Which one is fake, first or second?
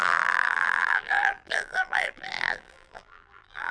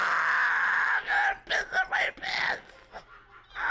first